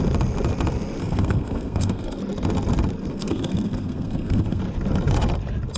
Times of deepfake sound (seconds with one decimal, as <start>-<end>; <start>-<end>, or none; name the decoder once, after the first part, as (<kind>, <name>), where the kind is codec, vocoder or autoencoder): 1.0-2.2 (codec, SNAC); 3.1-4.6